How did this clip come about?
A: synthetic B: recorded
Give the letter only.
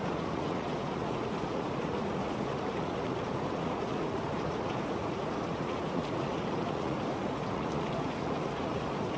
A